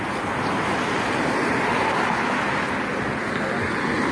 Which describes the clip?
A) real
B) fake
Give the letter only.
A